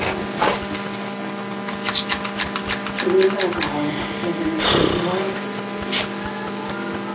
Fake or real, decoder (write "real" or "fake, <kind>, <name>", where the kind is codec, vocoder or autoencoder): real